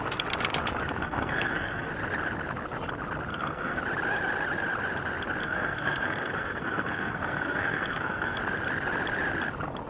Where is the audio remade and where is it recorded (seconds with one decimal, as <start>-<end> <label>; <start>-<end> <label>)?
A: 0.0-1.0 recorded; 1.0-1.9 remade; 1.9-3.3 recorded; 3.3-3.8 remade; 3.8-5.4 recorded; 5.4-8.4 remade; 8.4-9.9 recorded